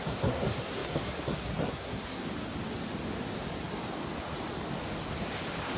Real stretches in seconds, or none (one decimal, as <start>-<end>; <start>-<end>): 2.2-5.8